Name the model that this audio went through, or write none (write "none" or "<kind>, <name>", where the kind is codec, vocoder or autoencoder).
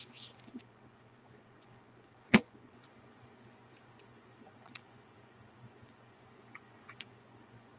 vocoder, Vocos